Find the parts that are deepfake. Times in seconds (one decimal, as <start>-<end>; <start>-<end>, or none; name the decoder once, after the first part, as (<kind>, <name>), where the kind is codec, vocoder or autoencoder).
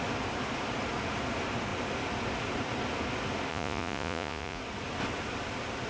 3.5-4.6 (vocoder, Vocos)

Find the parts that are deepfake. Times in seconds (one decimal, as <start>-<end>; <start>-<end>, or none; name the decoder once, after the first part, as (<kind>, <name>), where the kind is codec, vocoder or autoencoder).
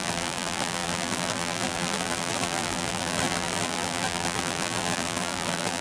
0.0-5.8 (vocoder, BigVGAN v2)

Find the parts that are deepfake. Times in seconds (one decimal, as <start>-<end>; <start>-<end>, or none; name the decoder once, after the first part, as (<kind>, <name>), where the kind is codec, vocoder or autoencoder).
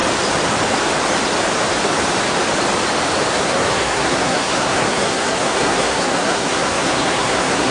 3.3-7.7 (codec, SNAC)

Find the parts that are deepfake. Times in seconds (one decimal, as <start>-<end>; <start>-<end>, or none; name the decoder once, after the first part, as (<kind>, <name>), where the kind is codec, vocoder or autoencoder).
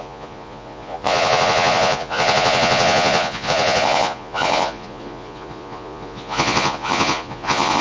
0.0-7.8 (vocoder, Vocos)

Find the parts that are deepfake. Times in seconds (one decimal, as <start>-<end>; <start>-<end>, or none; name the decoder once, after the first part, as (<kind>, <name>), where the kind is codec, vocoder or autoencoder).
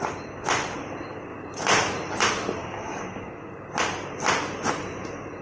2.6-3.5 (codec, DAC)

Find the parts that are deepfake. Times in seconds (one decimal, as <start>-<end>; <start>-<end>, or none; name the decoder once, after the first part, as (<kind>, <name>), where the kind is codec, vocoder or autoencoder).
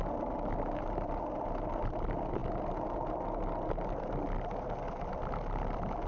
none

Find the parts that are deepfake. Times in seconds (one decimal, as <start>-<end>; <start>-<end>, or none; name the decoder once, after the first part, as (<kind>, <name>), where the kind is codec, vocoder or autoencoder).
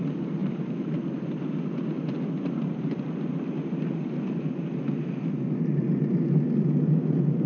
none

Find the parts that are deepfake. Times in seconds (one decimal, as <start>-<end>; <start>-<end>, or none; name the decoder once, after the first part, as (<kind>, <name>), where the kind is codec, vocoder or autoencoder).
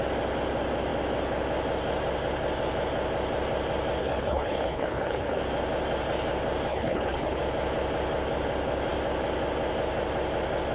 4.0-5.4 (codec, HILCodec); 6.7-7.4